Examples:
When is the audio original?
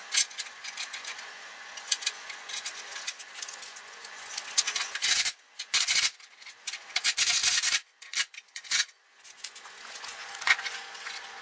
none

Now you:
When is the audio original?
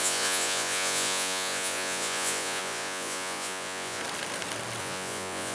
4.0-4.8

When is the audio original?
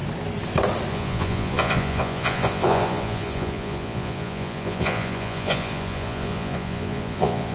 0.0-0.9